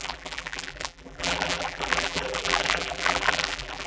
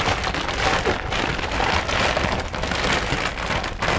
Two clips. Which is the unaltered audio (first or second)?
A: second